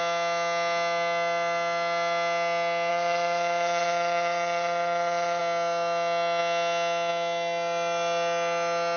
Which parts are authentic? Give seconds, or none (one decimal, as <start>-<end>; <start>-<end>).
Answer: 0.0-2.9; 5.4-9.0